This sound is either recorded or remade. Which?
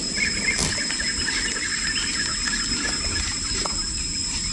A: recorded